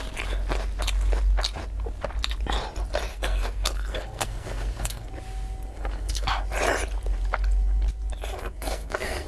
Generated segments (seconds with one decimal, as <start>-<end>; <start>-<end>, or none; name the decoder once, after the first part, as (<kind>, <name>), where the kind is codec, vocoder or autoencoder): 3.1-5.1 (codec, SNAC); 5.7-6.4; 8.4-9.3